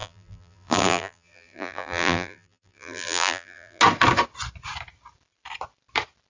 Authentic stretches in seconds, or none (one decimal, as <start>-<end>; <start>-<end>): 3.8-6.3